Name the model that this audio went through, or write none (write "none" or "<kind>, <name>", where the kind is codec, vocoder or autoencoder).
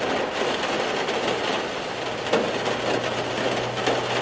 none